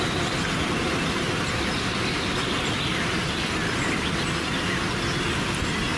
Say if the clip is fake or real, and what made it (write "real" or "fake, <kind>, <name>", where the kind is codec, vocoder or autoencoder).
real